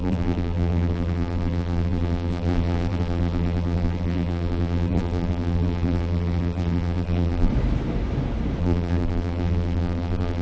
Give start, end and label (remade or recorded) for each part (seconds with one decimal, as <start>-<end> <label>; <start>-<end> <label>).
0.0-7.5 remade; 7.5-8.6 recorded; 8.6-10.4 remade